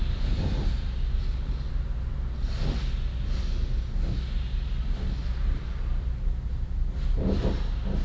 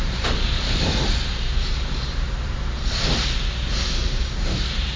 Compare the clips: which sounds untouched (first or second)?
first